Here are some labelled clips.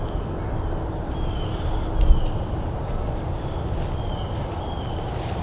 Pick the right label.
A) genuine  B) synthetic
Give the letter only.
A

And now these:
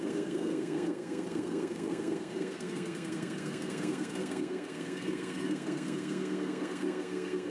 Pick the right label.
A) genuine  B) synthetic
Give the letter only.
B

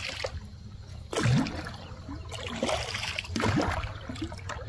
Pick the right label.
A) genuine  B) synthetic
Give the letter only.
A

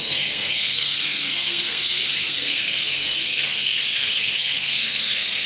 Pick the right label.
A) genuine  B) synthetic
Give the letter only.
B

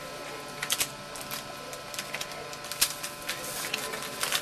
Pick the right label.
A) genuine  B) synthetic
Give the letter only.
A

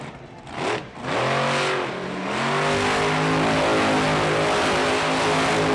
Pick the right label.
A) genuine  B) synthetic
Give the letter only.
A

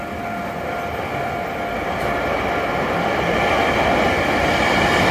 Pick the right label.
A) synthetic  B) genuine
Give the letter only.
B